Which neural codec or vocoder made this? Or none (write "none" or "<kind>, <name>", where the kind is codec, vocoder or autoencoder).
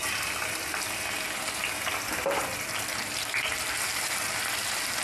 none